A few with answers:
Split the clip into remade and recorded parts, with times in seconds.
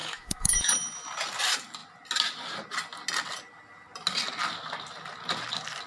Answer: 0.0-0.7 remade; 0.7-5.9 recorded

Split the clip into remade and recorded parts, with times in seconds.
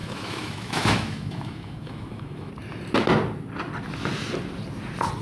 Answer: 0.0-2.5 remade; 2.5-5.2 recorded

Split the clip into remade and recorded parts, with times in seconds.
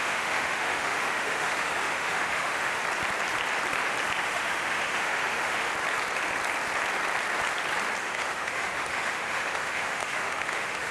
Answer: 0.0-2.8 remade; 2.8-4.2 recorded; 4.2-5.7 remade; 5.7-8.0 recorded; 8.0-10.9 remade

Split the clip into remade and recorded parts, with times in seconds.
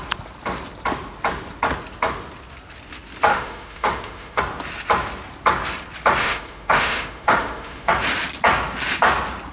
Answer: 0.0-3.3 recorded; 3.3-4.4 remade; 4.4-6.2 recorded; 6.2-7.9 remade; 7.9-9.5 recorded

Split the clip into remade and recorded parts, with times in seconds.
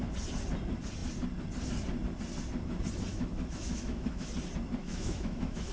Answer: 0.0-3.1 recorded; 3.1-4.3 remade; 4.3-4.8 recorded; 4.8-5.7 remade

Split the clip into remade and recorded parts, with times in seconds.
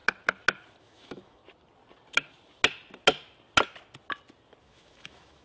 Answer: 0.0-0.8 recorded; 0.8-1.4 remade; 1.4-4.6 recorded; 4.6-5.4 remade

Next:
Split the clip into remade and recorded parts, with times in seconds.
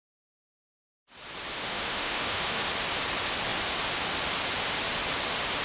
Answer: 0.0-1.5 recorded; 1.5-2.6 remade; 2.6-5.6 recorded